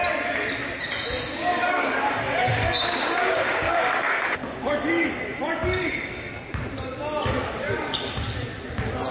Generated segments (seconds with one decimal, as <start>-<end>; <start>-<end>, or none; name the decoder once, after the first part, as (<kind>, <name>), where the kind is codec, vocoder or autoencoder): 1.5-6.3 (codec, DAC)